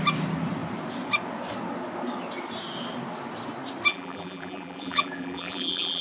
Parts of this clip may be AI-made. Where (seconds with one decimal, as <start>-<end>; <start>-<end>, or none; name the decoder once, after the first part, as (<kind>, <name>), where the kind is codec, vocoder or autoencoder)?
3.9-6.0 (vocoder, BigVGAN v2)